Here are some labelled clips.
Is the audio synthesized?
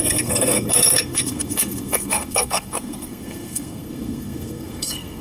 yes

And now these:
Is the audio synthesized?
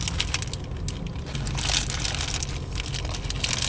no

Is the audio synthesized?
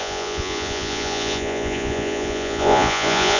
yes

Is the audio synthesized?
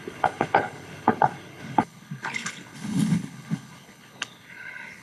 yes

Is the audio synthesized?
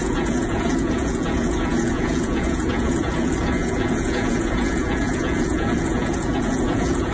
yes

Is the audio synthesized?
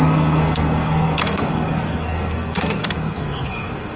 yes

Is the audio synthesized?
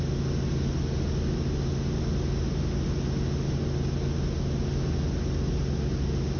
no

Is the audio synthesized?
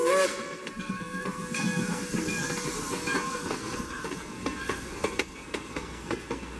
yes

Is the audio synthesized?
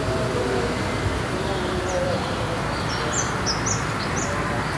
no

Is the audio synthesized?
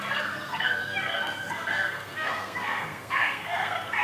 yes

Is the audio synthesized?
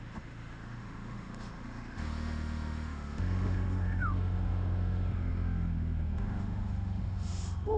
yes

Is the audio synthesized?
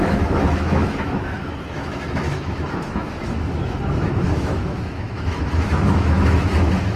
yes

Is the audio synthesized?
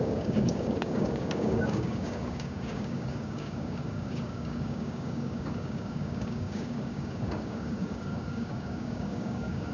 yes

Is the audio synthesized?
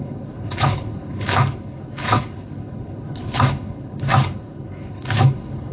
yes